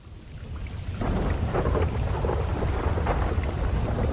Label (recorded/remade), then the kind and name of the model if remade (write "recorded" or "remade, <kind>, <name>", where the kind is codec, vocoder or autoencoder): recorded